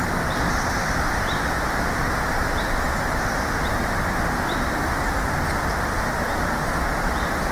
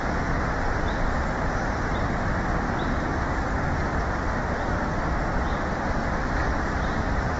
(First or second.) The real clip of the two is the first